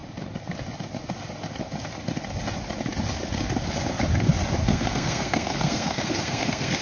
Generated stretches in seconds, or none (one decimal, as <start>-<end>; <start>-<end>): 4.6-6.8